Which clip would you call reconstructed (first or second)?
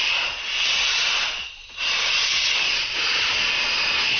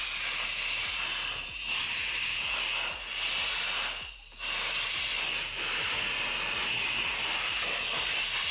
first